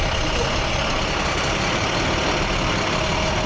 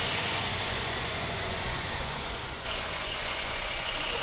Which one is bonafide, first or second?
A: first